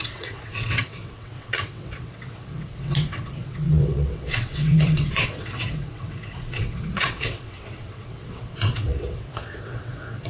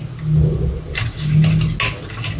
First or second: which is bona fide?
second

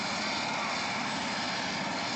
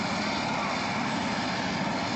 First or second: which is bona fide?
first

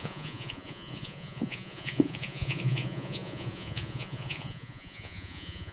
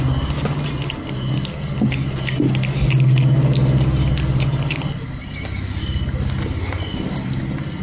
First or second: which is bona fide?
second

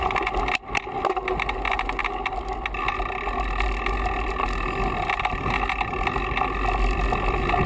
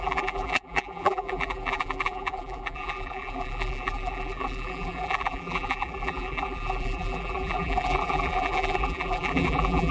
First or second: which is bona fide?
first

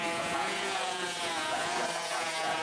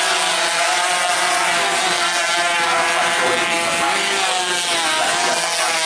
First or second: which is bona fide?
second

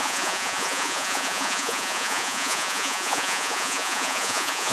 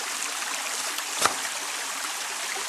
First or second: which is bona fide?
second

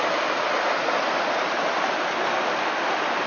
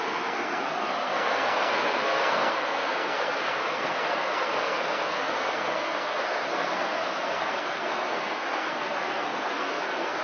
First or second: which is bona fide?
first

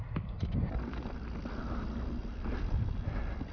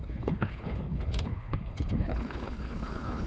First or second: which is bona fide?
first